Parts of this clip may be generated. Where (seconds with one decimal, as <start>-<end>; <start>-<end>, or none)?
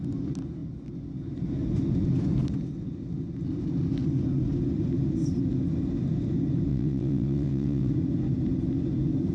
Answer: 6.7-7.9